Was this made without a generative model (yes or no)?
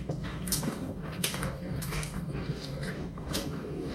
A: no